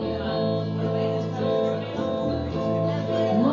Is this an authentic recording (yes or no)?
yes